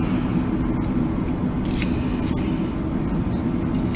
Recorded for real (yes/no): yes